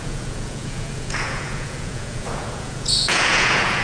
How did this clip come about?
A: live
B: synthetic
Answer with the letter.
B